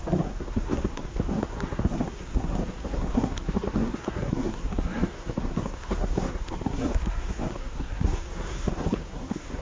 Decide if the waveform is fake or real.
fake